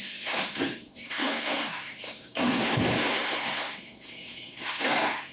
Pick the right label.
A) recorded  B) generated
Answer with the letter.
B